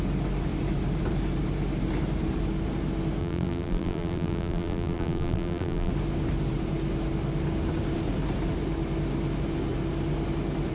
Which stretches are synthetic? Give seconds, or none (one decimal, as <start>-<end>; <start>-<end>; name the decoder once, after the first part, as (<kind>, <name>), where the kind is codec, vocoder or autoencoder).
3.2-5.9 (vocoder, BigVGAN v2)